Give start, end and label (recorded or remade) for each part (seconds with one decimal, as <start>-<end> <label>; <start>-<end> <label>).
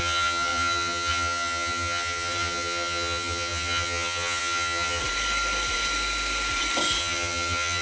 0.0-5.0 remade; 5.0-7.0 recorded; 7.0-7.8 remade